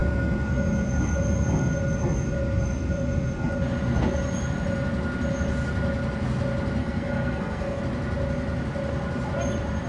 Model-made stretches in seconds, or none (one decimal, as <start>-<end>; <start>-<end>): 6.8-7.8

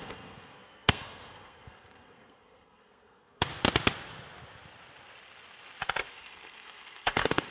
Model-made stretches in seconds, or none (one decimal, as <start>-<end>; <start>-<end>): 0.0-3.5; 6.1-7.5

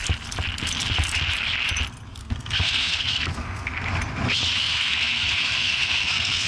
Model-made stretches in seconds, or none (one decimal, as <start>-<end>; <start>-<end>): 2.2-3.7; 4.6-6.5

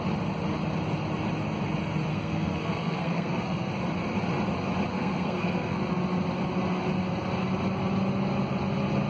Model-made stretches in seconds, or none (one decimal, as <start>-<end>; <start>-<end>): 2.1-3.7; 4.9-5.8

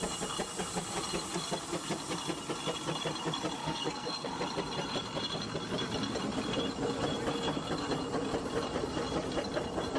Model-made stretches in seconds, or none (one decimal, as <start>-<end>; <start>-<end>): 3.6-4.3

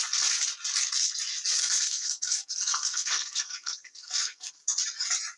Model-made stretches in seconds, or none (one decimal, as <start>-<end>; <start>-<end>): 1.6-4.5